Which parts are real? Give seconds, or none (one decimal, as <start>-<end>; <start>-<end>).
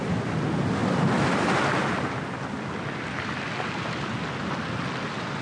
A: 0.0-5.4